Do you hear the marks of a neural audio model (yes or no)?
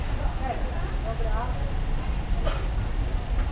no